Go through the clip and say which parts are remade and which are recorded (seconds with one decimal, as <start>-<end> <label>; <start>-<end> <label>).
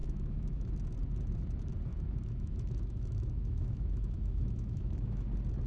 0.0-0.7 remade; 0.7-1.9 recorded; 1.9-5.3 remade; 5.3-5.7 recorded